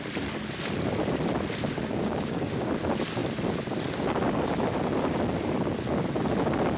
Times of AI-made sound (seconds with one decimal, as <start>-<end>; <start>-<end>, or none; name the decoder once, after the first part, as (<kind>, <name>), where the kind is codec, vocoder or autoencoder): 1.9-2.7 (codec, DAC)